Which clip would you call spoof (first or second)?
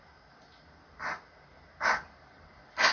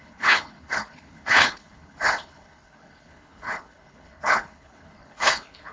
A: second